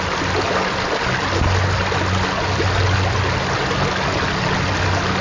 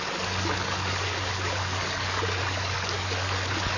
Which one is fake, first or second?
second